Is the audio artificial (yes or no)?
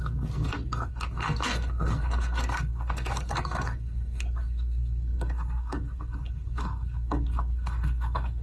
yes